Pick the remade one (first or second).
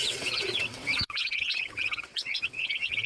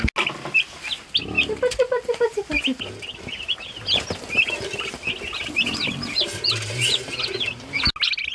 first